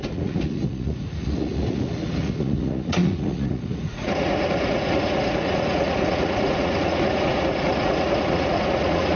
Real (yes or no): no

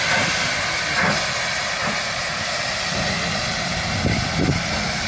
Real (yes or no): yes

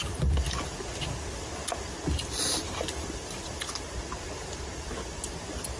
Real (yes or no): yes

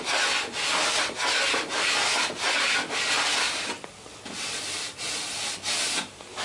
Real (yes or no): no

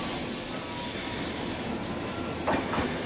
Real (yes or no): yes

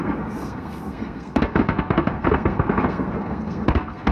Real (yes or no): no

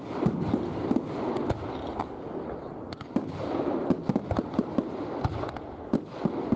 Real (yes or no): no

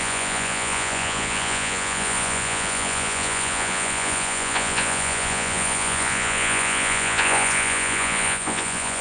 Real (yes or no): no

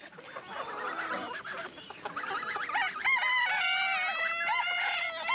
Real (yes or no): yes